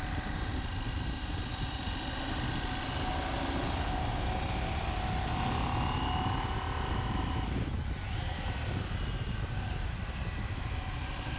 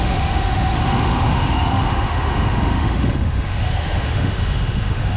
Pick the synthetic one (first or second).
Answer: second